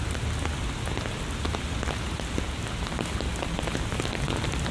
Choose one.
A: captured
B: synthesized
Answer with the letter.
A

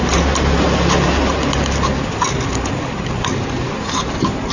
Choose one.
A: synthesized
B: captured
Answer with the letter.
B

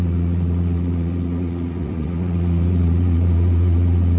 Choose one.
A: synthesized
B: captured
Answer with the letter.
A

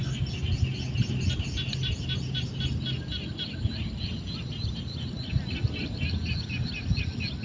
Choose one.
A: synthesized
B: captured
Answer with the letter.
B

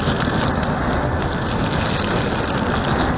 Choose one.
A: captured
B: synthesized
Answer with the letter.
A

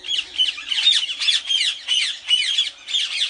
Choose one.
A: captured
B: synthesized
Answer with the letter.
A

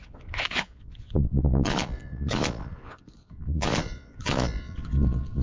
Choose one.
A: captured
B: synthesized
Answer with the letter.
B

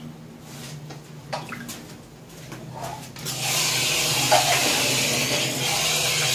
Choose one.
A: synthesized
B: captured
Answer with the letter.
B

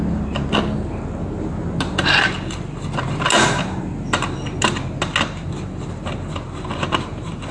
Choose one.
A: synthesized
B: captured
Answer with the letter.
B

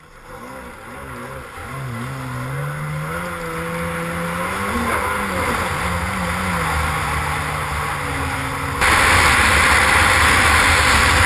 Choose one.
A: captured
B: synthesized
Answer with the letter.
A